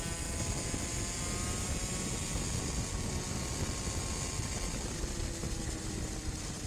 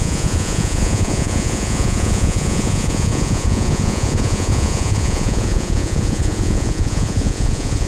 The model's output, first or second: second